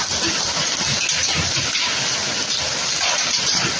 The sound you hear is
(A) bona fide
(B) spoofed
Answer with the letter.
A